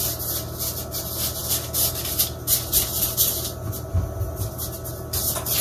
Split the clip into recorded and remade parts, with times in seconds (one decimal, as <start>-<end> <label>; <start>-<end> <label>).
0.0-5.6 recorded